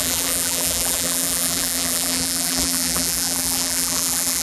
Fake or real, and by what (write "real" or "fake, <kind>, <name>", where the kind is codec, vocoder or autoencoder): fake, vocoder, BigVGAN v2